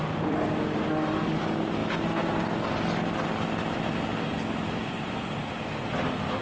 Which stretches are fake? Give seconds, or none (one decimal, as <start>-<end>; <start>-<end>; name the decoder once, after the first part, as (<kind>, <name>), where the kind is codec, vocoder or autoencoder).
none